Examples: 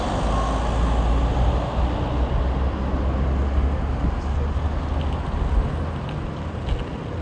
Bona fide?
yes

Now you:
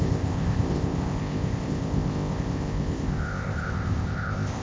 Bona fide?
no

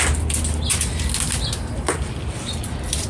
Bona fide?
yes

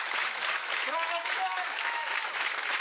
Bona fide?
no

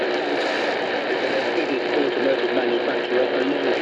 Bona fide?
yes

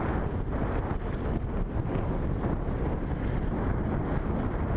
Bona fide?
yes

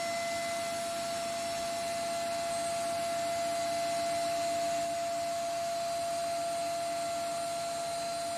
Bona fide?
yes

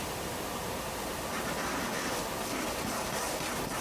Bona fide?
yes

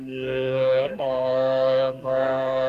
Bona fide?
no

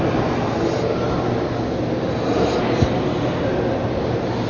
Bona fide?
yes